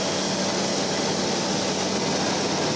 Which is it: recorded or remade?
recorded